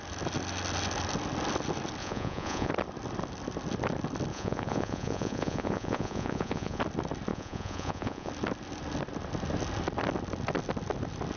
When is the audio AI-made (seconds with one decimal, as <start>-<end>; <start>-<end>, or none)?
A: 2.0-2.7; 4.3-6.8; 7.3-8.3